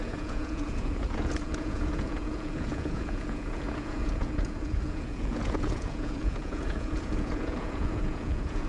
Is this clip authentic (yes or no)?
no